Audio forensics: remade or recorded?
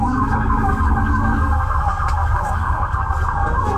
remade